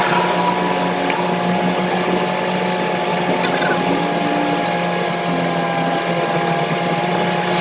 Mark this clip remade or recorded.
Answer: recorded